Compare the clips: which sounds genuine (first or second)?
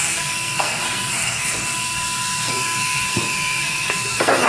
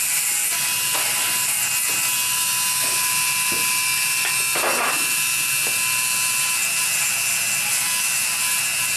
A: second